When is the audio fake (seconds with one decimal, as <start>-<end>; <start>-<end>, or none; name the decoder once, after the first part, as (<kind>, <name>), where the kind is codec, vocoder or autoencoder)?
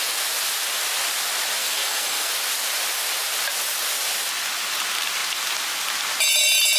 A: 1.6-2.3 (codec, SNAC)